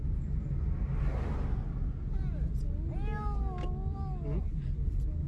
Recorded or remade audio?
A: recorded